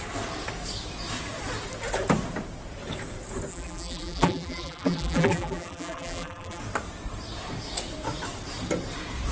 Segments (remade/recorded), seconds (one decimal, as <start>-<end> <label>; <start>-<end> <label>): 0.0-3.5 recorded; 3.5-6.6 remade; 6.6-9.3 recorded